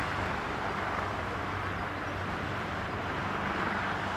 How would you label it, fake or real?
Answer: real